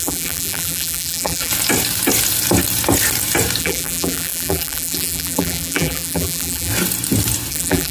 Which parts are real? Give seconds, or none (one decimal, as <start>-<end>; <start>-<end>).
1.5-3.6; 6.7-7.5